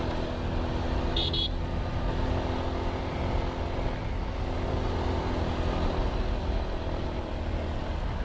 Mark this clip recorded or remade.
recorded